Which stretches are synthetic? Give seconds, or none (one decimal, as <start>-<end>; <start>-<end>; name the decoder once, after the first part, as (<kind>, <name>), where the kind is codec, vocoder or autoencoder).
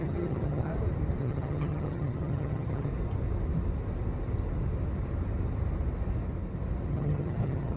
0.0-0.7 (vocoder, HiFi-GAN); 1.2-2.9; 6.9-7.8